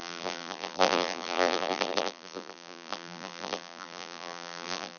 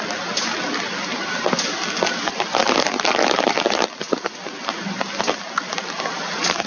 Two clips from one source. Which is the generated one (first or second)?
first